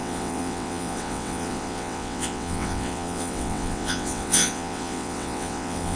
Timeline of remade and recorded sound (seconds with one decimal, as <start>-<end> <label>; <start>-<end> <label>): 0.0-6.0 remade